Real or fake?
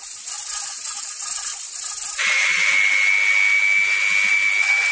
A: real